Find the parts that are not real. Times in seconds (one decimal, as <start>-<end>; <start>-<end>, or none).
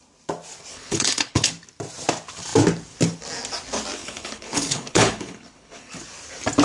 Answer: 0.7-1.5; 4.0-6.0